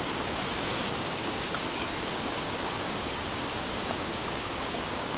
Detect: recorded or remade remade